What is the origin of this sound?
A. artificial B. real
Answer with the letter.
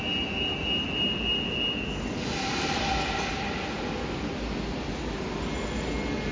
B